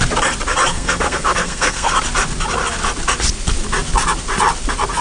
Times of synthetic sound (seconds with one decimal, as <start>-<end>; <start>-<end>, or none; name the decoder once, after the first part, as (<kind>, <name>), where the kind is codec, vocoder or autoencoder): 0.7-1.9 (codec, SNAC)